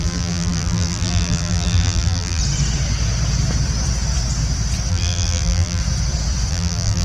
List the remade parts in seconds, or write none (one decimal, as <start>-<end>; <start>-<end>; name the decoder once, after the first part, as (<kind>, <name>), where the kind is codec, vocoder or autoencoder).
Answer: 0.0-2.4 (vocoder, BigVGAN v2); 4.9-5.8; 6.5-7.0